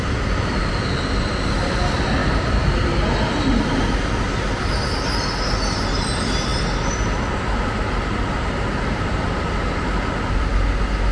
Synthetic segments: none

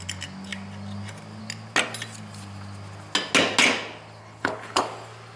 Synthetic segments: 4.2-4.8 (codec, HILCodec)

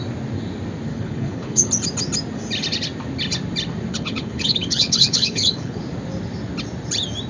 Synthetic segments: 0.9-1.7 (codec, HILCodec); 3.9-5.8

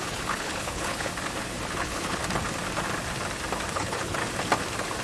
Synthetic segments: 0.0-1.1 (codec, HILCodec); 1.8-2.2; 3.7-4.2

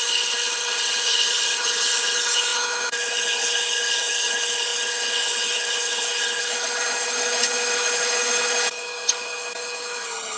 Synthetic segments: 0.0-10.4 (codec, HILCodec)

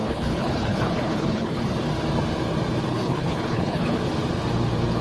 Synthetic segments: 0.0-1.7 (codec, HILCodec); 2.9-4.0

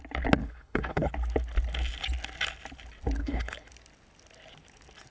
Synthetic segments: 0.4-1.1 (codec, HILCodec); 3.2-3.7